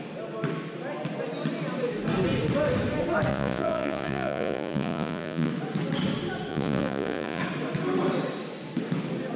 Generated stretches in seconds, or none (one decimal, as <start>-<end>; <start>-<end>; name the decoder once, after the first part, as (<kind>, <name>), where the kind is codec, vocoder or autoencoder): 3.3-5.5 (vocoder, Vocos); 6.5-7.4